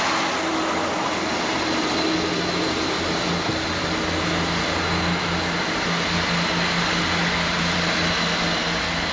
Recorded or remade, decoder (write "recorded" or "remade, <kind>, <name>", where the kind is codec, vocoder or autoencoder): recorded